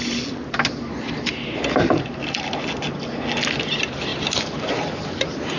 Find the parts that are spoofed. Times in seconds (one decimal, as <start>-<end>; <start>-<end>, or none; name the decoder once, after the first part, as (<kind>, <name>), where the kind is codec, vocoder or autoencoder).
4.1-4.7 (vocoder, BigVGAN v2)

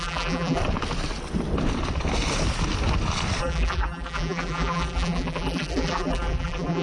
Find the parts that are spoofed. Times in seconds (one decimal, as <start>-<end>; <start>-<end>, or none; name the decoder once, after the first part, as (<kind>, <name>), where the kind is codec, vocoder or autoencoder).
0.0-0.6 (vocoder, BigVGAN v2); 3.4-6.8

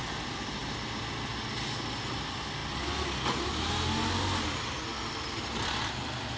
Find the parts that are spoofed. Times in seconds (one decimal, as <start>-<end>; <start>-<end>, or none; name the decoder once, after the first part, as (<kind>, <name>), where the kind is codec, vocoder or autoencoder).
none